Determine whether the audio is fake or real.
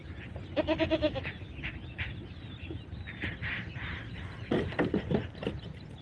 fake